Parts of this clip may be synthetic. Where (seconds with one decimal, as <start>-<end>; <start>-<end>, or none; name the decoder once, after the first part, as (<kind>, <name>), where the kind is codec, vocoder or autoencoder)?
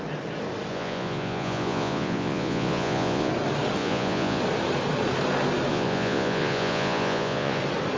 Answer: 0.7-3.3 (vocoder, Vocos); 3.8-4.4; 5.7-7.6